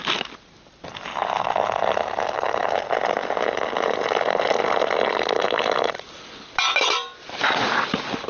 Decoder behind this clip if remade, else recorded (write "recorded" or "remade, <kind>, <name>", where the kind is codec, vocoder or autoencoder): recorded